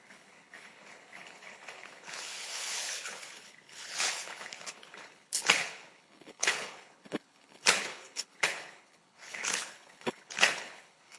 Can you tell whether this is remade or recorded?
remade